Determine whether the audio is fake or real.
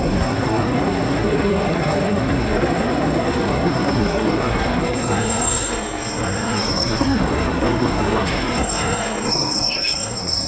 fake